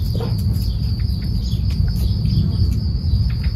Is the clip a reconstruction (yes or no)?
no